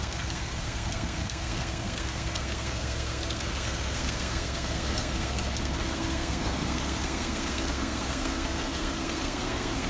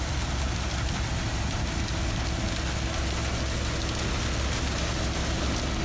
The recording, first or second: second